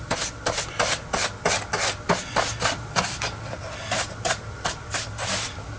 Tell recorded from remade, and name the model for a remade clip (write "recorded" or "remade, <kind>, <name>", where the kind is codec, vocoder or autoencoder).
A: recorded